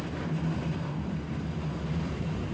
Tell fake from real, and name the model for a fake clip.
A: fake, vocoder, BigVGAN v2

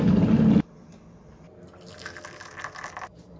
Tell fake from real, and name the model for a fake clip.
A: real